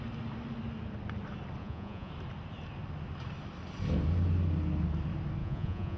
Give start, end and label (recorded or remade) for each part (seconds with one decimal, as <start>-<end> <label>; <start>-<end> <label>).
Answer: 0.0-1.6 recorded; 1.6-2.1 remade; 2.1-5.4 recorded; 5.4-6.0 remade